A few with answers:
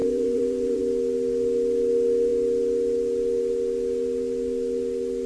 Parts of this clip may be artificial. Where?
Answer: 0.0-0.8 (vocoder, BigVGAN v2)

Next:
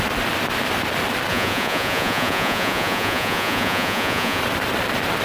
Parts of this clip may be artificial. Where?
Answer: 1.3-4.4 (vocoder, Vocos)

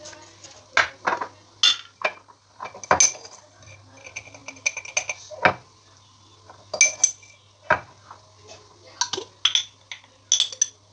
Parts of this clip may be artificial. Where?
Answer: none

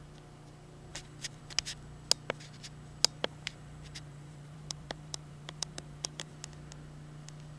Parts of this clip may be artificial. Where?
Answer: 0.9-1.4 (vocoder, BigVGAN v2); 3.2-6.3

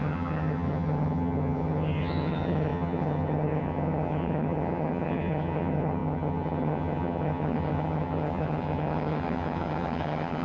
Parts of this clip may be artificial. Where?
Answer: 0.0-10.4 (vocoder, HiFi-GAN)

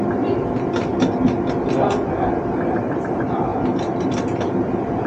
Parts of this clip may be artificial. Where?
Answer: 0.0-0.9 (vocoder, BigVGAN v2); 1.7-3.5; 4.0-5.1

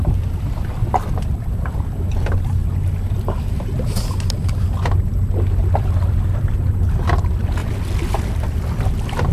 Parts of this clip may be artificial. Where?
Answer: 0.0-2.6 (vocoder, BigVGAN v2); 5.8-9.3

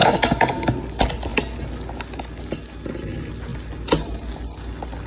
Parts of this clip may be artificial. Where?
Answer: 0.0-0.7 (codec, DAC)